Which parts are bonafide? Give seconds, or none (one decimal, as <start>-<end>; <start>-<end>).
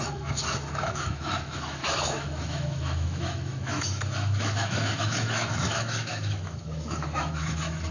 none